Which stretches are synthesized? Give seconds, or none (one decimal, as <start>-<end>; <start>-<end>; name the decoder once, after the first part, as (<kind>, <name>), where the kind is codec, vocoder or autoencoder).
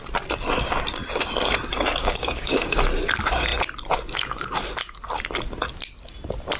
2.0-2.8 (codec, DAC)